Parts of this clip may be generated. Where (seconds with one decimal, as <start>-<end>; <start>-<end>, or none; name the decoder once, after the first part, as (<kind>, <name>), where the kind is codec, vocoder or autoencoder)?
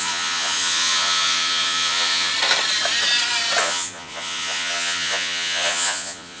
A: 0.0-2.3 (vocoder, Vocos); 3.6-6.4